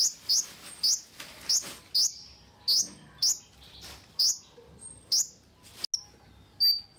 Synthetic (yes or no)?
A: no